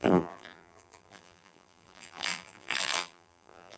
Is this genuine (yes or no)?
no